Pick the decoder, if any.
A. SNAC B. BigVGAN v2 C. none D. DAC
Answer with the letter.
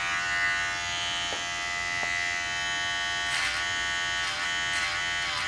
C